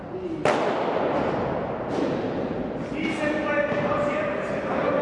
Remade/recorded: recorded